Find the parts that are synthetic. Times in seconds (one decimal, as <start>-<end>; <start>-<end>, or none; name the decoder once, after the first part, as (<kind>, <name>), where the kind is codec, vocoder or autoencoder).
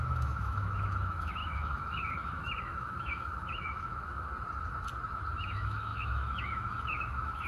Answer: 0.0-4.3 (autoencoder, DAC-VAE); 5.4-7.5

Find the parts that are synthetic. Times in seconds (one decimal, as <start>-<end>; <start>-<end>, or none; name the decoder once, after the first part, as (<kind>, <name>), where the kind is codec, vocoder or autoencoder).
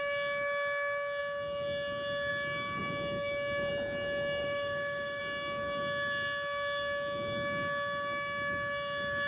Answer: 4.4-5.2 (autoencoder, DAC-VAE)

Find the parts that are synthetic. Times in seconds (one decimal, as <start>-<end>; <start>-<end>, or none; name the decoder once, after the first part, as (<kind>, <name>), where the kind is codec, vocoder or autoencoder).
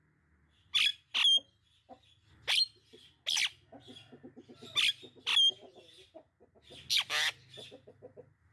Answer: none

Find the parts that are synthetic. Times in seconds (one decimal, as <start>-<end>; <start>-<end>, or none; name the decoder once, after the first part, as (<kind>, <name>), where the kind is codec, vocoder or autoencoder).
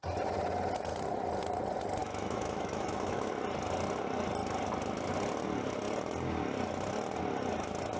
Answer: 2.0-3.3 (autoencoder, DAC-VAE)